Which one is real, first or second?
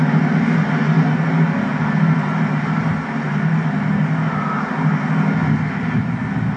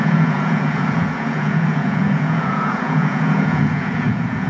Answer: first